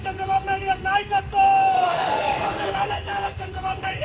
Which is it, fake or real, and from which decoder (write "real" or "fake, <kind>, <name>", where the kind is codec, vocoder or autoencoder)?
fake, autoencoder, DAC-VAE